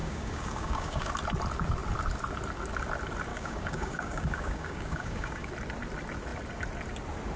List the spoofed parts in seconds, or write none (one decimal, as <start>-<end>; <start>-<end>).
0.0-1.1; 3.3-5.5